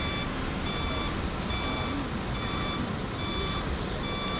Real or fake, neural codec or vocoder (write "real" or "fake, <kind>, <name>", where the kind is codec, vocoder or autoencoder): real